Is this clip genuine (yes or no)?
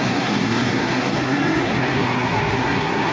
no